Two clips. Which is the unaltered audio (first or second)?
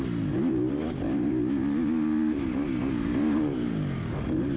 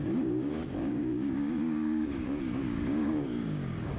first